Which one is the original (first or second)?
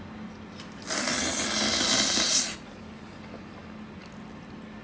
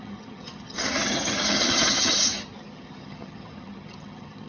first